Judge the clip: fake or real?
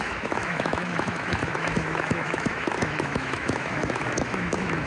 fake